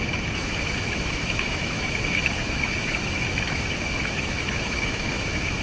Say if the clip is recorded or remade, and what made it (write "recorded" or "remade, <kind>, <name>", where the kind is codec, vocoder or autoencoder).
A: remade, autoencoder, DAC-VAE